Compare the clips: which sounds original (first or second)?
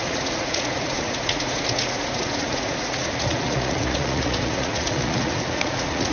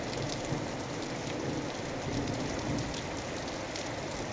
second